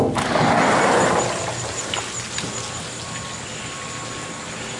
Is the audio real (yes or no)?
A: yes